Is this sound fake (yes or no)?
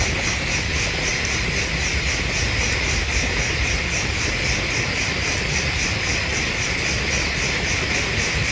no